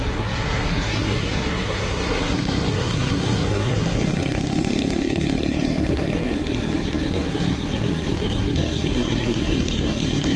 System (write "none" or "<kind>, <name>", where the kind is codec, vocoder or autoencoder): codec, SNAC